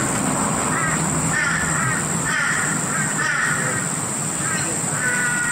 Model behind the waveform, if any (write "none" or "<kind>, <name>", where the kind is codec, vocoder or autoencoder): vocoder, BigVGAN v2